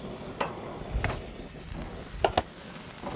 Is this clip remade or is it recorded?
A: recorded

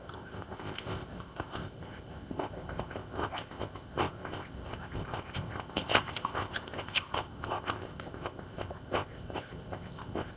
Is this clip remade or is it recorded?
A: remade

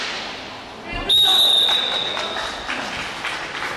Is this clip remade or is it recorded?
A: recorded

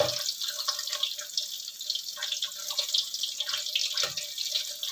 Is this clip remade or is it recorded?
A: recorded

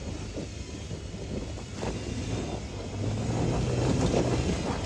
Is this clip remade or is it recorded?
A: recorded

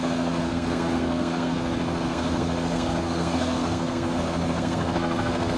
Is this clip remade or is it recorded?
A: remade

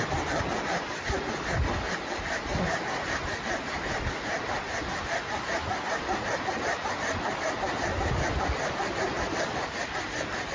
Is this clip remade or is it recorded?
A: recorded